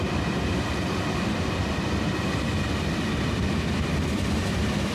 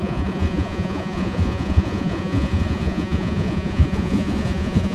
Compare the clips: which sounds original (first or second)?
first